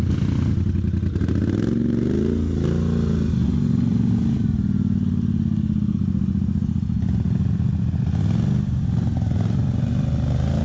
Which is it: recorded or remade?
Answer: recorded